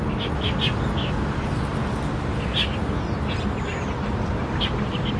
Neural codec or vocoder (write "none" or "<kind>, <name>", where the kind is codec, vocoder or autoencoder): none